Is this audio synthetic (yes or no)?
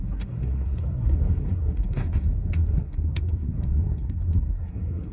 yes